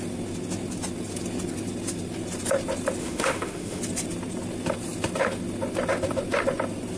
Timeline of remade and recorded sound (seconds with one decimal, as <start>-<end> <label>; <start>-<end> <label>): 0.0-3.0 recorded; 3.0-3.8 remade; 3.8-7.0 recorded

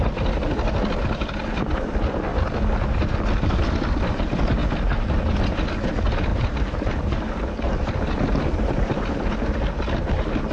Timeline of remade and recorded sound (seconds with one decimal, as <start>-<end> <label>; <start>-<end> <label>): 0.0-6.3 recorded; 6.3-7.3 remade; 7.3-10.5 recorded

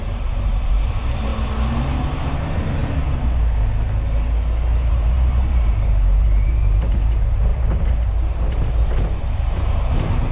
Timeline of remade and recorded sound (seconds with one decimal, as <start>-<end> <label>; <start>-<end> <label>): 0.0-1.3 remade; 1.3-2.2 recorded; 2.2-2.8 remade; 2.8-4.9 recorded; 4.9-10.3 remade

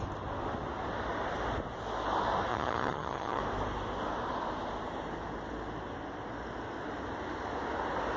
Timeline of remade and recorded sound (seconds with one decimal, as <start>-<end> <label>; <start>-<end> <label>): 0.0-2.5 recorded; 2.5-3.4 remade; 3.4-8.2 recorded

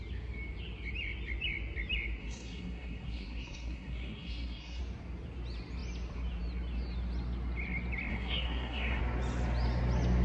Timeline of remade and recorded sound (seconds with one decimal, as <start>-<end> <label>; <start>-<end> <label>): 0.0-2.2 recorded; 2.2-4.8 remade; 4.8-8.1 recorded; 8.1-9.0 remade; 9.0-10.2 recorded

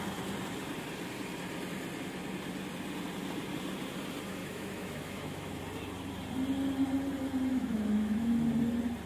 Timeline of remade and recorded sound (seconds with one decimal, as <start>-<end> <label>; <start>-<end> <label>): 0.0-4.4 recorded; 4.4-5.6 remade; 5.6-7.5 recorded; 7.5-8.3 remade; 8.3-9.1 recorded

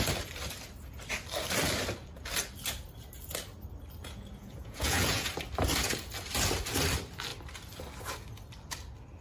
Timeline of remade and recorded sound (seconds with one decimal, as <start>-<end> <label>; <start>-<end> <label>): 0.0-4.0 recorded; 4.0-5.3 remade; 5.3-9.2 recorded